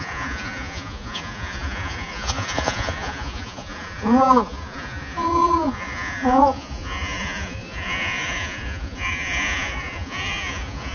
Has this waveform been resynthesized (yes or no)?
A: yes